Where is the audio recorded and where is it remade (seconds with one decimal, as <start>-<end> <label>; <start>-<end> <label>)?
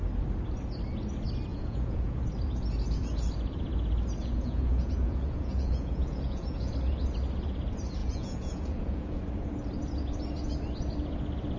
0.0-1.5 recorded; 1.5-2.2 remade; 2.2-4.2 recorded; 4.2-6.7 remade; 6.7-8.0 recorded; 8.0-9.2 remade; 9.2-11.6 recorded